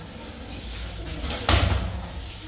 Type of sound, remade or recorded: recorded